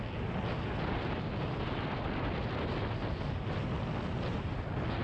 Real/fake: real